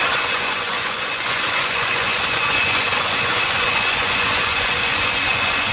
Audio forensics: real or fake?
fake